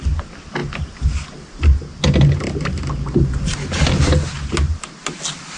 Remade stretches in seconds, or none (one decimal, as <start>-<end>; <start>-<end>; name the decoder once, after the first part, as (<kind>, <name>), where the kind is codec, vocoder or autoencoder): none